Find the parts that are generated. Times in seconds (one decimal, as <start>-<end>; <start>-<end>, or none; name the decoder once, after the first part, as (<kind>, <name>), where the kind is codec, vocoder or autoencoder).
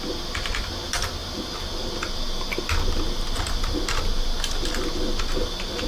none